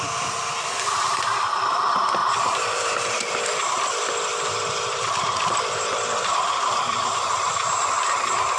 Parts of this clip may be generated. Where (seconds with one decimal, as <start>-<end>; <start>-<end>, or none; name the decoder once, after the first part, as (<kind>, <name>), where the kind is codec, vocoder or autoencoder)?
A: 0.0-8.6 (vocoder, BigVGAN v2)